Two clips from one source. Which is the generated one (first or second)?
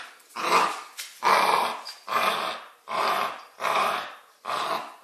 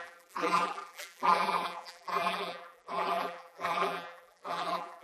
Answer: second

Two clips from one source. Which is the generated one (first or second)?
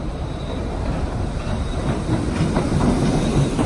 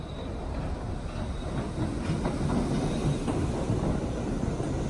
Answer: first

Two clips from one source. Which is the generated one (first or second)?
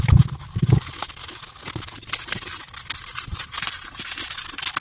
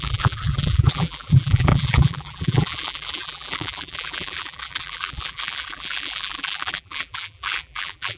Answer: second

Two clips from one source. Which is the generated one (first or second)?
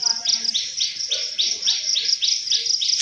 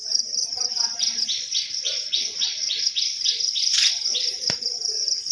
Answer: second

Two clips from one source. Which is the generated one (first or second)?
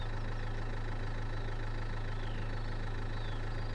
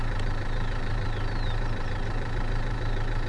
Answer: second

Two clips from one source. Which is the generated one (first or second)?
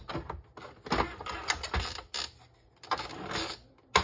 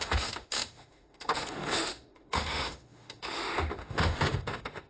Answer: second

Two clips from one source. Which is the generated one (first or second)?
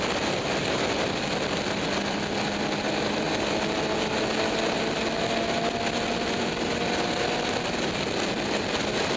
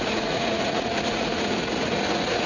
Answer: second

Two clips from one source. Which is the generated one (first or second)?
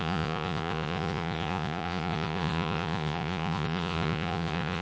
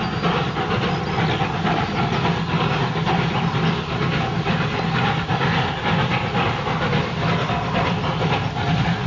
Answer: first